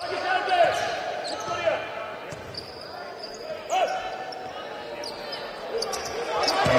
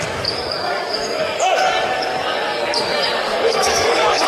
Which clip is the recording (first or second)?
first